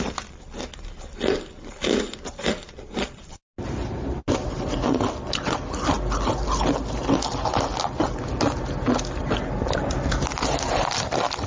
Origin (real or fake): real